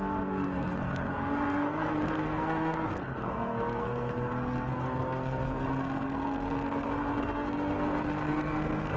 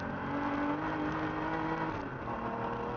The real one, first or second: second